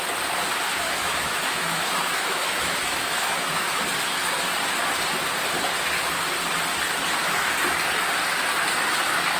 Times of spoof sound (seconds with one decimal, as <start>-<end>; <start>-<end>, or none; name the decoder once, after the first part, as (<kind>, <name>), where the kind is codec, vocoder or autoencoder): 1.0-3.8 (autoencoder, DAC-VAE)